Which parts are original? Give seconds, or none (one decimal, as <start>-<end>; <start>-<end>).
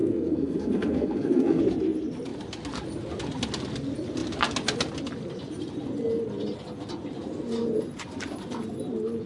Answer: 1.6-9.3